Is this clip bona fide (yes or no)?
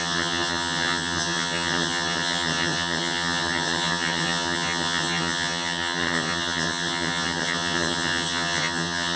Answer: no